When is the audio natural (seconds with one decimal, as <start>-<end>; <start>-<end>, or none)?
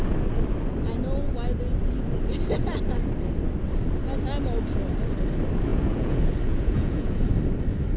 0.0-5.7; 7.3-8.0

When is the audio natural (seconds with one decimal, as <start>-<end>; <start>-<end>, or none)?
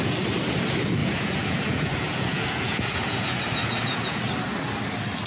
0.0-1.0; 4.2-5.3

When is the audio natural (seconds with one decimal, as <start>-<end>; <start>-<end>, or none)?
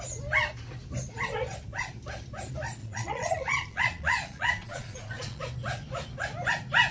0.0-2.8; 5.4-6.9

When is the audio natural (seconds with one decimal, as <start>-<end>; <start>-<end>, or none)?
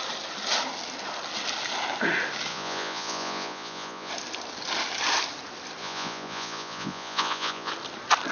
0.0-2.5; 4.1-5.8; 7.7-8.3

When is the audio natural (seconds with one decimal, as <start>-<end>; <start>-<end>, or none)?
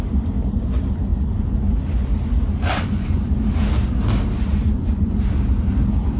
0.0-2.7; 3.2-4.5; 5.2-6.2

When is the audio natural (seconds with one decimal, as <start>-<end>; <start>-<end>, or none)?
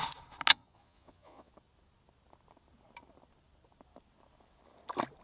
0.0-0.5; 1.5-5.2